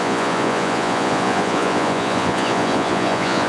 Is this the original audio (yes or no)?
no